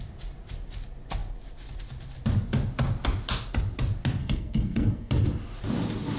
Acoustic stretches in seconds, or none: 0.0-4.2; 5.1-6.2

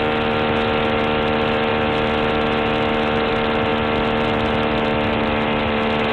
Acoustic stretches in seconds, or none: 0.0-6.1

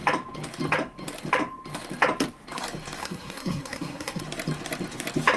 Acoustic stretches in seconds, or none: 0.0-3.0; 4.2-5.4

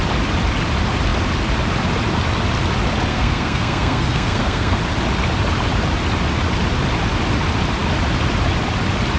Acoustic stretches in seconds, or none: 0.0-3.1; 4.8-9.2

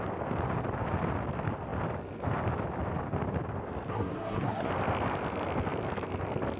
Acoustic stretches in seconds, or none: 0.0-3.9; 4.7-6.6

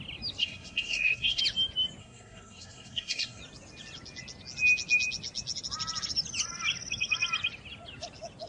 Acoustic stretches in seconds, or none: 0.0-0.4; 1.4-2.0; 3.4-8.5

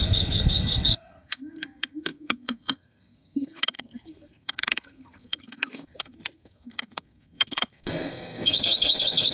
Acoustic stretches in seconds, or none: none

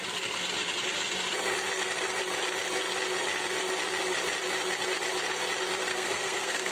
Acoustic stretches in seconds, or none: 0.0-5.9